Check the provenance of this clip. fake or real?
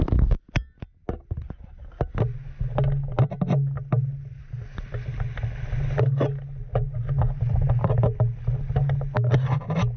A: real